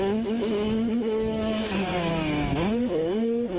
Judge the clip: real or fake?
fake